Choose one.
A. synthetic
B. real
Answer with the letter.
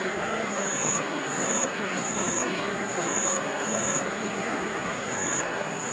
A